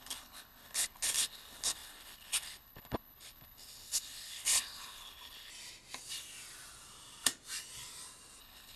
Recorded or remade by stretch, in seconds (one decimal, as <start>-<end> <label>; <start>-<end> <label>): 0.0-5.5 remade; 5.5-8.4 recorded; 8.4-8.8 remade